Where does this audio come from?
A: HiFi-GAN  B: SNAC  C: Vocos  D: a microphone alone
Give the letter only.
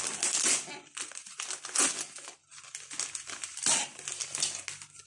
D